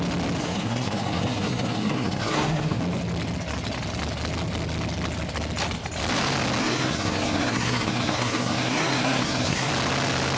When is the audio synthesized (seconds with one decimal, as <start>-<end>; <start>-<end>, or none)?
0.4-2.8; 6.6-9.7